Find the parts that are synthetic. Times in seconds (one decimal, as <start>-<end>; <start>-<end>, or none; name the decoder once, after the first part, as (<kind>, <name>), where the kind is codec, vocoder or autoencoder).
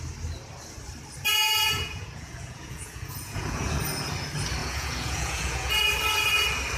1.3-3.8 (vocoder, Vocos); 4.6-5.7